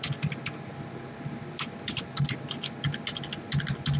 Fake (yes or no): no